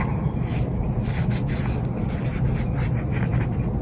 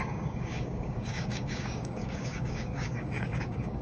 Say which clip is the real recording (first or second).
first